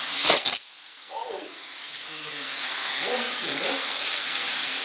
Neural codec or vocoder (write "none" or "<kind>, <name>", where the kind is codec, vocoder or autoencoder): codec, SNAC